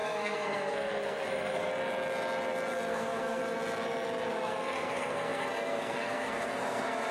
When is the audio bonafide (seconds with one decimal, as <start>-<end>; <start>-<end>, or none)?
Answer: 1.7-2.9; 3.4-4.3